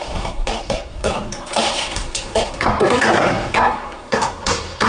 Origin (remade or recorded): remade